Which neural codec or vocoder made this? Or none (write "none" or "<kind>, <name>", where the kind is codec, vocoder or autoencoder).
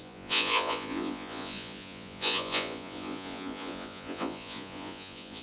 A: vocoder, Vocos